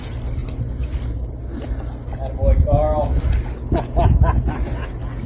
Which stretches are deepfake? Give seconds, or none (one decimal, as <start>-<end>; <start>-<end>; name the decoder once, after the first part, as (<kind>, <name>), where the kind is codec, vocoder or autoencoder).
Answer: none